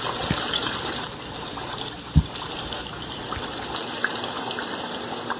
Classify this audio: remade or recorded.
recorded